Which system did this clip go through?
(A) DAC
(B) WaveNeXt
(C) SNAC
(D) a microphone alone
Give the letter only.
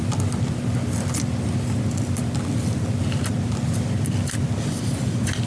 D